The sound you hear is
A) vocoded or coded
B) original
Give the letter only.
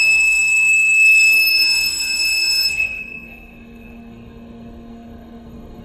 A